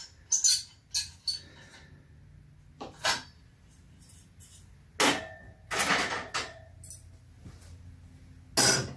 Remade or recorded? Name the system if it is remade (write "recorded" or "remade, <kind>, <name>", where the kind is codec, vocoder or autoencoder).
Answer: recorded